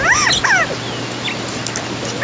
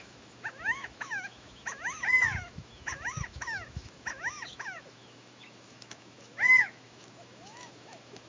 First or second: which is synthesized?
second